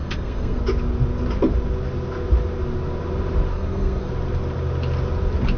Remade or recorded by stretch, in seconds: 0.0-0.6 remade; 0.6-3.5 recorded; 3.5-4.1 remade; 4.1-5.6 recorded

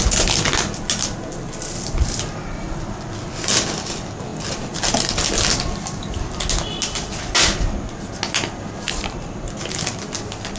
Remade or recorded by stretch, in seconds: 0.0-10.6 recorded

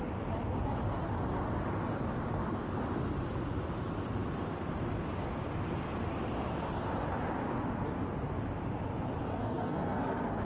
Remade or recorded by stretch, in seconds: 0.0-9.3 recorded; 9.3-10.4 remade

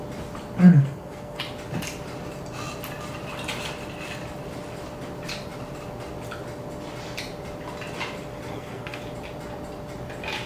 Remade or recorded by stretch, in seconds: 0.0-0.7 recorded; 0.7-1.4 remade; 1.4-8.5 recorded; 8.5-9.0 remade; 9.0-10.5 recorded

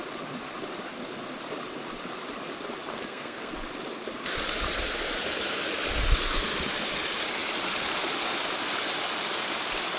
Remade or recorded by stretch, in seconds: 0.0-2.9 recorded; 2.9-3.5 remade; 3.5-10.0 recorded

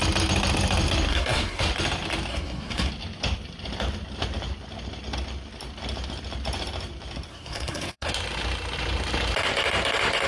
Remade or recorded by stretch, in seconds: 0.0-1.1 recorded; 1.1-1.6 remade; 1.6-2.3 recorded; 2.3-2.9 remade; 2.9-7.3 recorded; 7.3-8.1 remade; 8.1-10.3 recorded

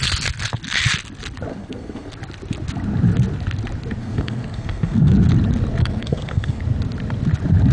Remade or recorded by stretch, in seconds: 0.0-1.5 recorded; 1.5-2.1 remade; 2.1-4.0 recorded; 4.0-5.1 remade; 5.1-5.8 recorded; 5.8-6.6 remade; 6.6-7.7 recorded